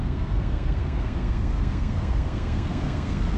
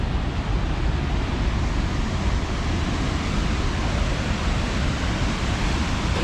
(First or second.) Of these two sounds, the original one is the second